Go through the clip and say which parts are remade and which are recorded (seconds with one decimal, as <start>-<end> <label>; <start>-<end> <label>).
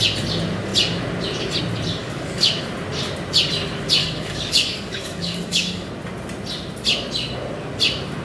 0.0-2.0 recorded; 2.0-2.5 remade; 2.5-4.0 recorded; 4.0-5.9 remade; 5.9-8.2 recorded